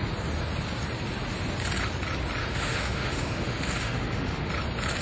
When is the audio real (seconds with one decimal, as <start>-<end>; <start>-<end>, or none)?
0.0-2.4; 4.5-5.0